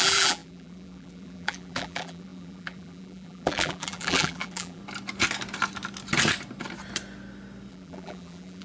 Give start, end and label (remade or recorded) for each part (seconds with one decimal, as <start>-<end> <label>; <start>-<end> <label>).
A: 0.0-4.8 remade; 4.8-7.7 recorded; 7.7-8.6 remade